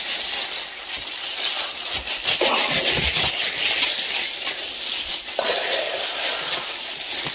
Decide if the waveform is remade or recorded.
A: recorded